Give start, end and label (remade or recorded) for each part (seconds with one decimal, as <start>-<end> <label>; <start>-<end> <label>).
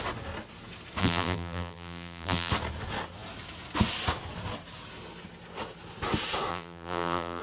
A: 0.0-1.0 recorded; 1.0-2.5 remade; 2.5-6.5 recorded; 6.5-7.4 remade